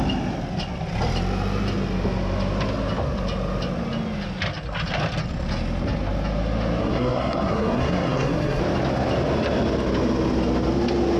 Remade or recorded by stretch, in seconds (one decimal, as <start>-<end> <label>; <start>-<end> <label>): 0.0-6.8 recorded; 6.8-8.6 remade; 8.6-11.2 recorded